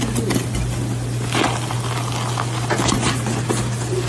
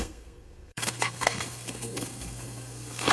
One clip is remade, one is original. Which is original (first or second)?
first